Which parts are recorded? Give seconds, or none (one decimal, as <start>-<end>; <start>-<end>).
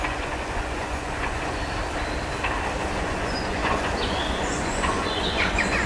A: 1.6-3.0